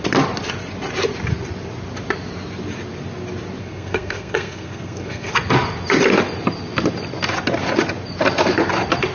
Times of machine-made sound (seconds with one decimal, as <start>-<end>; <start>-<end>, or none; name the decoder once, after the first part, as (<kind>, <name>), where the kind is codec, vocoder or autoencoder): 3.6-5.3 (codec, SNAC)